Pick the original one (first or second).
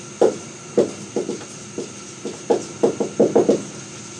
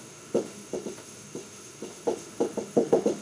first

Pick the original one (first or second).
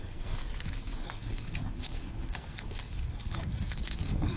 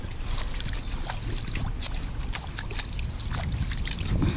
second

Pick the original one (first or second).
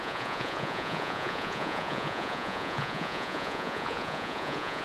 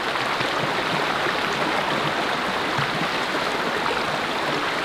second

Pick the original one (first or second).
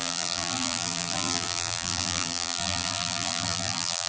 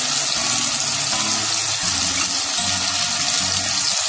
second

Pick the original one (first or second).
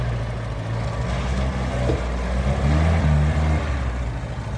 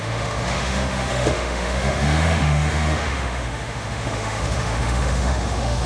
first